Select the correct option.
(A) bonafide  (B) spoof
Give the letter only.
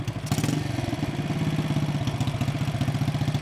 A